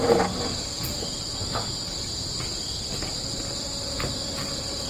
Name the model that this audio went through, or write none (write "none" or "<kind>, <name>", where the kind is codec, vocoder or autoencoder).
none